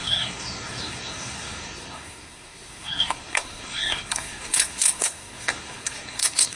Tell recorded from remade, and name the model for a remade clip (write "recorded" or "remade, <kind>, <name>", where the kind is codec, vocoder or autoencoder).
remade, codec, SNAC